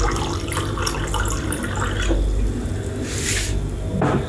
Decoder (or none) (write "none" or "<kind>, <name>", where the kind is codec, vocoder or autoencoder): none